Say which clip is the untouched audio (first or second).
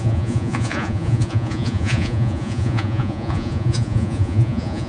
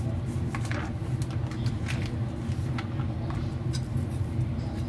second